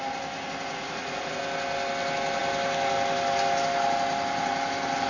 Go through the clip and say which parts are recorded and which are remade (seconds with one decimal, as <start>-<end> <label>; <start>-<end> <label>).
0.0-0.7 recorded; 0.7-1.4 remade; 1.4-5.1 recorded